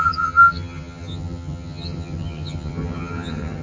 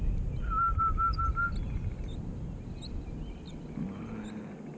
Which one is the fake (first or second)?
first